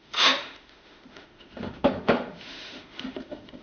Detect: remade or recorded remade